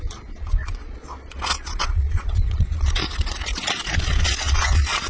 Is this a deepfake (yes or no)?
yes